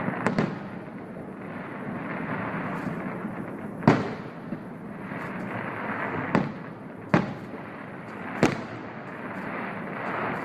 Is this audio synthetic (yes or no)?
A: no